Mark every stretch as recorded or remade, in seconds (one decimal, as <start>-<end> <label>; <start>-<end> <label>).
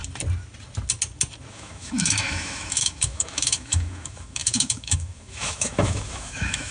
0.0-1.5 recorded; 1.5-6.7 remade